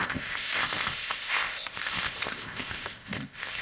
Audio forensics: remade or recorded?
remade